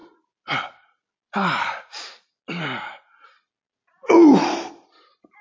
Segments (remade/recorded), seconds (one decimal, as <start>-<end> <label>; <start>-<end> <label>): 0.0-5.4 recorded